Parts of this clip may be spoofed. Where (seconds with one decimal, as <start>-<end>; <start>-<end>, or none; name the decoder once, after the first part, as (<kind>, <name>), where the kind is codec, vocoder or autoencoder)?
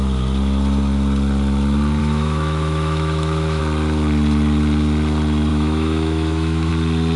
2.0-3.6 (autoencoder, DAC-VAE); 5.5-6.7